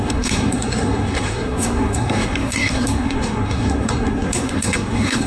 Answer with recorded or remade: remade